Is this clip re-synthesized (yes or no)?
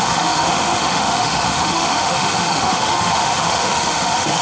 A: yes